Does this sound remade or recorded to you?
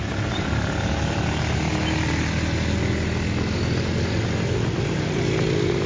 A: recorded